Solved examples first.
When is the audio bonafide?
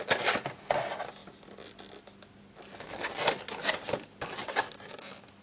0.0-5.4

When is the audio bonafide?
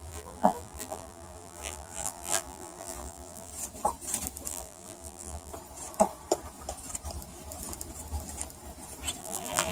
3.5-4.5; 5.5-9.2